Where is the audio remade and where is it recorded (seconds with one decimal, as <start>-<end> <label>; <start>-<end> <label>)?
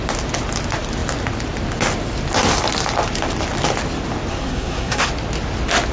0.0-4.3 recorded; 4.3-5.1 remade; 5.1-5.9 recorded